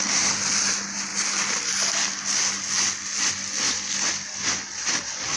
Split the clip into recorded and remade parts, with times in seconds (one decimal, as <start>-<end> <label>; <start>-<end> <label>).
0.0-5.4 recorded